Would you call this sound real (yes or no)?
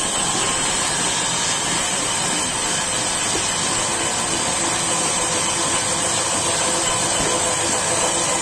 yes